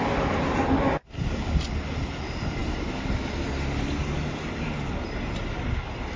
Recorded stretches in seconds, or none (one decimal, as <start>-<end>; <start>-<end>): 0.0-6.2

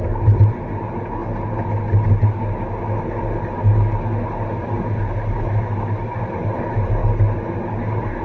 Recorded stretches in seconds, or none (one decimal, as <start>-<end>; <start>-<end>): 1.2-5.5; 7.0-7.7

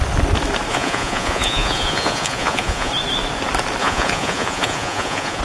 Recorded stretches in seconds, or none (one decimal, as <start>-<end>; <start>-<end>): 0.0-0.7; 2.9-3.8

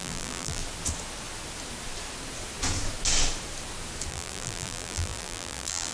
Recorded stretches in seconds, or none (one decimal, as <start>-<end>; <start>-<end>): 0.6-4.1